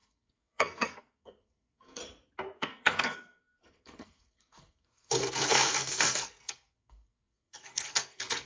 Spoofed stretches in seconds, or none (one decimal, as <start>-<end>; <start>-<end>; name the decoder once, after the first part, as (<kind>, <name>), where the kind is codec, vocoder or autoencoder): 0.0-2.0 (codec, SNAC); 2.6-8.5